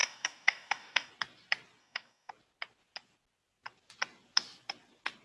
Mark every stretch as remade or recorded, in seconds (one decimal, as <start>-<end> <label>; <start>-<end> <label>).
0.0-1.1 remade; 1.1-1.8 recorded; 1.8-2.3 remade; 2.3-5.2 recorded